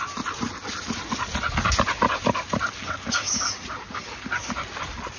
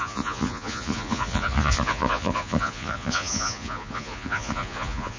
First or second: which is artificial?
second